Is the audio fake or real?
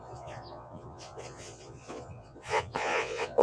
fake